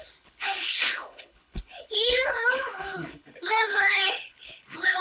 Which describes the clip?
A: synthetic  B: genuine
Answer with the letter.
A